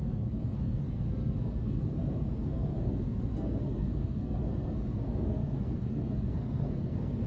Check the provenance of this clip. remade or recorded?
remade